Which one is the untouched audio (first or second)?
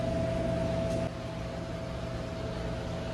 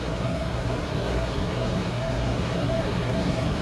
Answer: first